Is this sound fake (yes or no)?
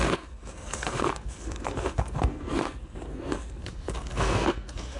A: yes